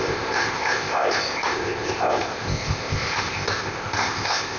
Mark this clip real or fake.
fake